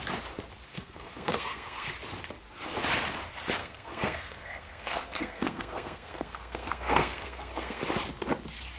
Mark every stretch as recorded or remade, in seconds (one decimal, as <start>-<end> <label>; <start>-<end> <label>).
0.0-0.7 recorded; 0.7-1.9 remade; 1.9-3.6 recorded; 3.6-7.8 remade; 7.8-8.8 recorded